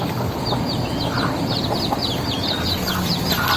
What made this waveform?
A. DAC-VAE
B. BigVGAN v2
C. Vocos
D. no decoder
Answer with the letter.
D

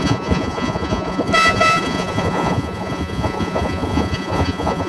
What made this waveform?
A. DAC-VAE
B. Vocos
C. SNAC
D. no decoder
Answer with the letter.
B